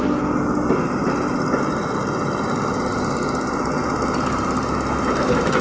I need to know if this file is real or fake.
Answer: real